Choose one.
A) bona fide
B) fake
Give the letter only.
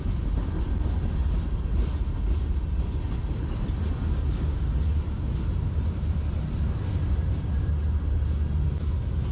A